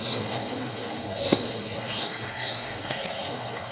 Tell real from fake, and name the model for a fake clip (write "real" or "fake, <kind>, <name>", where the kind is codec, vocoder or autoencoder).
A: fake, codec, SNAC